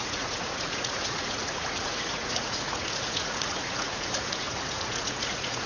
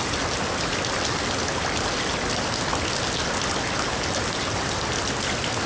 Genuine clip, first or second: second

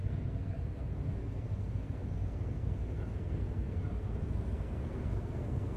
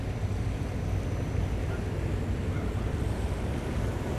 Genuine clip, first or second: second